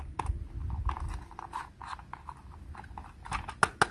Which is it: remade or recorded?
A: recorded